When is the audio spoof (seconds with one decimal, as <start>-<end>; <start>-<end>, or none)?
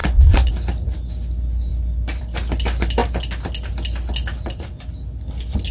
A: 0.0-0.5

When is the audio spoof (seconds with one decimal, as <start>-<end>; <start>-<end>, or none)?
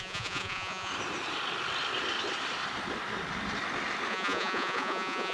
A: 0.0-0.9; 4.1-5.3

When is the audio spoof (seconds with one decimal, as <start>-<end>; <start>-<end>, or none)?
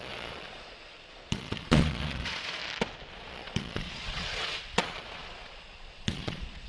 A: 0.0-2.6; 3.1-6.7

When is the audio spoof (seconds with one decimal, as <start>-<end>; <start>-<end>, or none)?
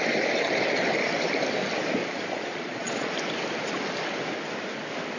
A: 2.0-3.1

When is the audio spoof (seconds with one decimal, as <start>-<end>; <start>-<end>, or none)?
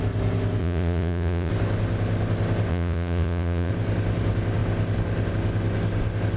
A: 0.6-1.5; 2.7-3.7